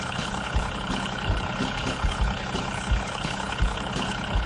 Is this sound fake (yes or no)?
yes